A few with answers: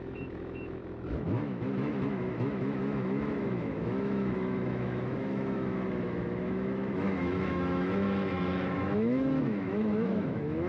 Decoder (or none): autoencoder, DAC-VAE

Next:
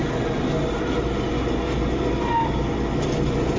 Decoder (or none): none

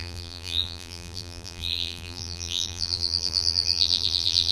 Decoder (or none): vocoder, BigVGAN v2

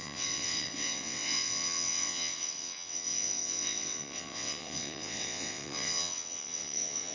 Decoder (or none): vocoder, WaveNeXt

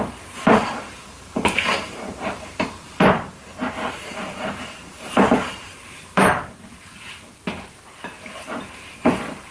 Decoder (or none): vocoder, BigVGAN v2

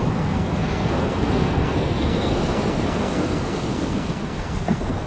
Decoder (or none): codec, SNAC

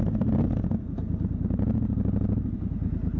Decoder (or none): none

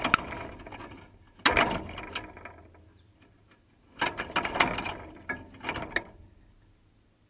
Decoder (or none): none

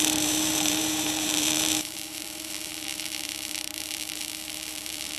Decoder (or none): vocoder, BigVGAN v2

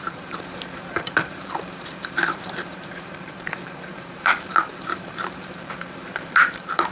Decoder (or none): vocoder, BigVGAN v2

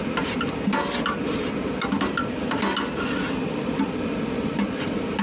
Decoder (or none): none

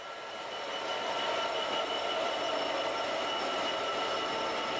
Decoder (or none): none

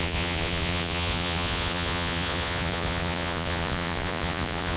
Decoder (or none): vocoder, Vocos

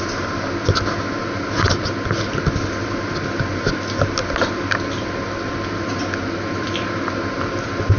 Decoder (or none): none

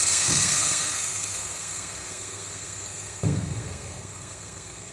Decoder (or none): codec, SNAC